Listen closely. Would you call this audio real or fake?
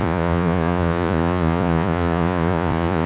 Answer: fake